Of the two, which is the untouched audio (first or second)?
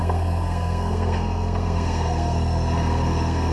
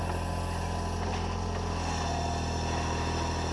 second